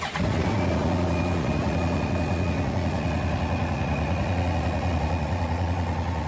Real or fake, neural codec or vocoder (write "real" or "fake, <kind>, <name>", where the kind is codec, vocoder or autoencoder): fake, vocoder, Vocos